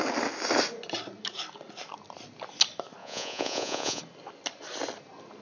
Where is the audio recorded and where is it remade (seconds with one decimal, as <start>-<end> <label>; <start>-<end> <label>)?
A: 0.0-3.0 recorded; 3.0-4.0 remade; 4.0-5.4 recorded